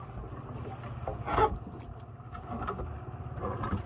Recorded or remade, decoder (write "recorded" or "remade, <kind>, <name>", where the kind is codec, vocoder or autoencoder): recorded